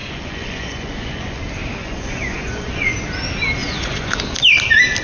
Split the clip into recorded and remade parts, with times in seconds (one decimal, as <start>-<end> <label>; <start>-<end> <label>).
0.0-1.4 remade; 1.4-1.8 recorded; 1.8-3.0 remade; 3.0-3.6 recorded; 3.6-4.2 remade; 4.2-5.0 recorded